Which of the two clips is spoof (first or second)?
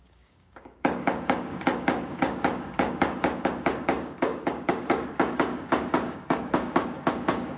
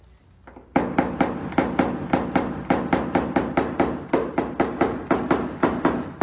first